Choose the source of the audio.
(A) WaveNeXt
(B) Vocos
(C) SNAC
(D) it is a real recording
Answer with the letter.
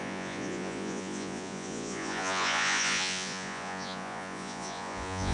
B